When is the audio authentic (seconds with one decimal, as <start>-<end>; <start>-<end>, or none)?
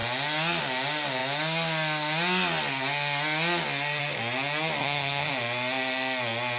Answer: 0.0-4.8; 5.3-6.6